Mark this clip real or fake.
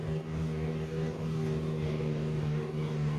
fake